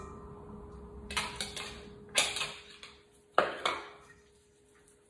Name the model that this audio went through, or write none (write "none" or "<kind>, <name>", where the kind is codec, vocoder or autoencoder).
none